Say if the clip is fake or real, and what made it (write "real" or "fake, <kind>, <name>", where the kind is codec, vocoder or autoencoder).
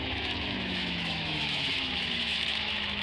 fake, autoencoder, DAC-VAE